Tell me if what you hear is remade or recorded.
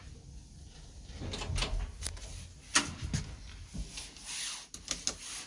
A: recorded